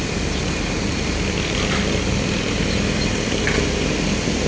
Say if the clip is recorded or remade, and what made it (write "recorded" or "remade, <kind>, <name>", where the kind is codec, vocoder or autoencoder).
recorded